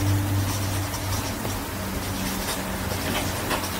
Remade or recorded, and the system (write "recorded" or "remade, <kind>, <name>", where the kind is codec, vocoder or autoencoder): recorded